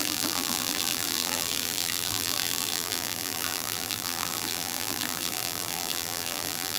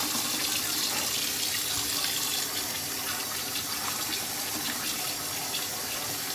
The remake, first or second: first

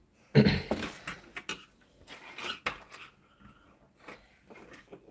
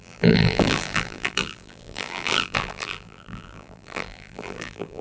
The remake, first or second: second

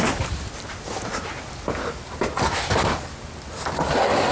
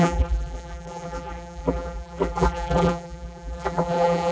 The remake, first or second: second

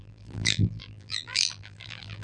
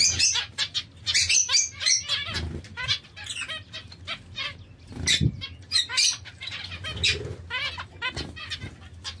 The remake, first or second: first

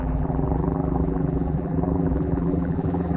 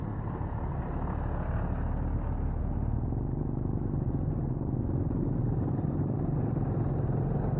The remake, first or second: first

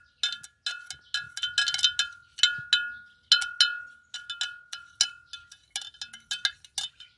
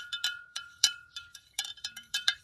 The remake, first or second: second